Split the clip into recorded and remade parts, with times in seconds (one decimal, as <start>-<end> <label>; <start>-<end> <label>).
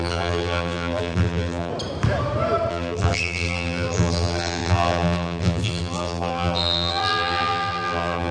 0.0-1.7 remade; 1.7-2.7 recorded; 2.7-8.3 remade